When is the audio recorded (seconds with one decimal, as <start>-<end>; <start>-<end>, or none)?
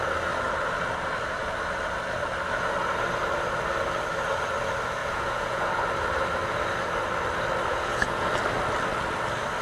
0.0-5.0; 5.7-7.7; 8.3-9.6